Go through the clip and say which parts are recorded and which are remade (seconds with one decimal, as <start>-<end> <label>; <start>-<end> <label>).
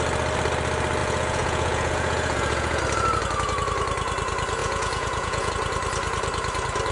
0.0-1.0 recorded; 1.0-2.8 remade; 2.8-4.6 recorded; 4.6-5.5 remade; 5.5-6.9 recorded